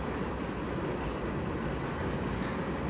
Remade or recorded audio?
recorded